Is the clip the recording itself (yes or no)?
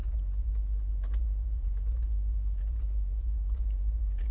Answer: no